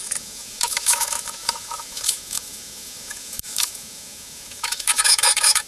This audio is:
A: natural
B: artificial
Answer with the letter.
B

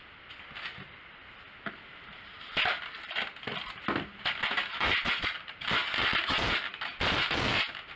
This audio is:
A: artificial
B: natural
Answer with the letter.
B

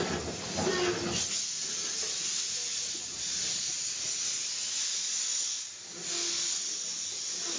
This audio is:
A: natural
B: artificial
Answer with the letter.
A